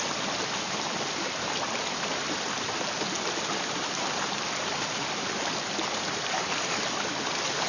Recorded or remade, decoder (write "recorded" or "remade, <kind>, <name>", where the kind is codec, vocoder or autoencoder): recorded